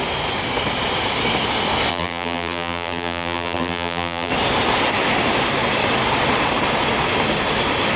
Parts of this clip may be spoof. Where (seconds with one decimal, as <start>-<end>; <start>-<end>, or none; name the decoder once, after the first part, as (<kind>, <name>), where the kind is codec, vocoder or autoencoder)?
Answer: 1.9-4.3 (vocoder, BigVGAN v2)